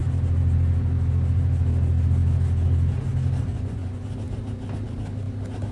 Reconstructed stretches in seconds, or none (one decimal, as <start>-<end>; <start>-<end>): 3.5-4.0

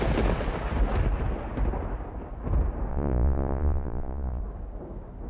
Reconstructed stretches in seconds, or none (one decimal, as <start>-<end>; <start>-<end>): 2.9-4.4